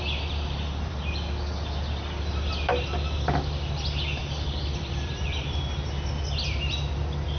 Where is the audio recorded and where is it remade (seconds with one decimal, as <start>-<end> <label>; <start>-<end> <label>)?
0.0-4.2 recorded; 4.2-5.6 remade; 5.6-7.4 recorded